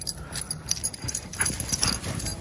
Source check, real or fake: real